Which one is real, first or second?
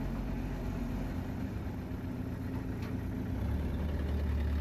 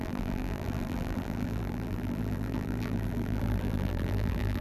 first